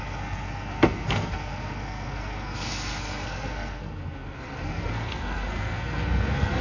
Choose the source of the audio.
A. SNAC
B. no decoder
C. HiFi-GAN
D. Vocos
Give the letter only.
A